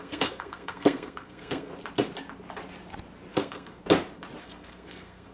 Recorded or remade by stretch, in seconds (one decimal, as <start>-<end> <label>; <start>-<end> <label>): 0.0-1.7 remade; 1.7-3.3 recorded; 3.3-3.8 remade; 3.8-4.4 recorded; 4.4-5.3 remade